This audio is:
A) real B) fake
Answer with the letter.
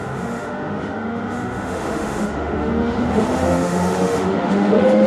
B